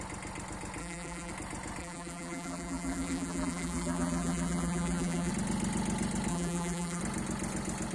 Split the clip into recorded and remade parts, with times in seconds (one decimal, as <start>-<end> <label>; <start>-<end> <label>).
0.0-0.8 recorded; 0.8-1.3 remade; 1.3-1.8 recorded; 1.8-5.3 remade; 5.3-6.3 recorded; 6.3-7.0 remade; 7.0-7.9 recorded